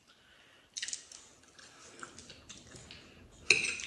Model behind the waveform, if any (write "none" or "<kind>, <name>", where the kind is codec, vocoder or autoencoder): none